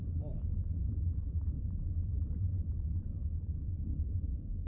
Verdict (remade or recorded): remade